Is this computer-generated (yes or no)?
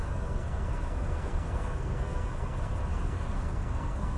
yes